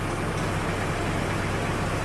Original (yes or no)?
yes